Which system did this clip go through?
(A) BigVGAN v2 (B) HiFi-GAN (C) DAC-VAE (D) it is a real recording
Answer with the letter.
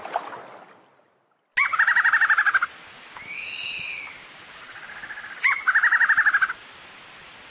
D